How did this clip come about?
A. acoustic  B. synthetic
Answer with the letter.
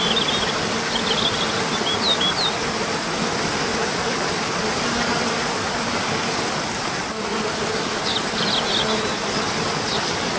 A